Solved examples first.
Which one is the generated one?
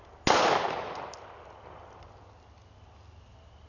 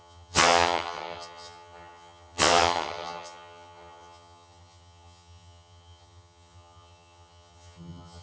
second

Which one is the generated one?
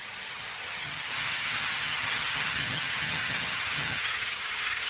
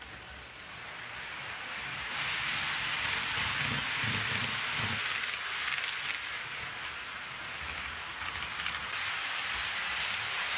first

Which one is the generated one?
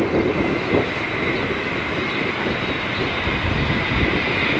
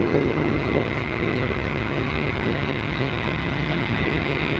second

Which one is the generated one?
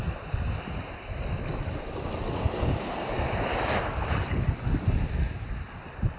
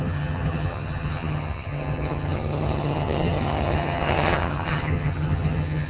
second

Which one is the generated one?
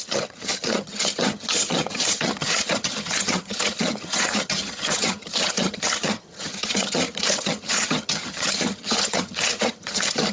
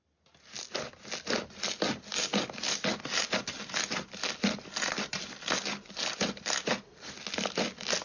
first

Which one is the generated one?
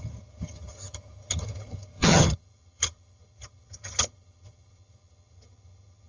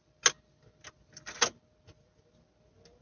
first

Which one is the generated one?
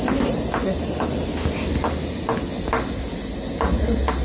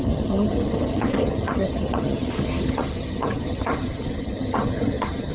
second